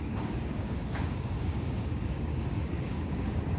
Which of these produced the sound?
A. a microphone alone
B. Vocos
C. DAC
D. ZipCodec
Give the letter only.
C